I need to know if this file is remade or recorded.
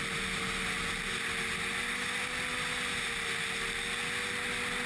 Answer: recorded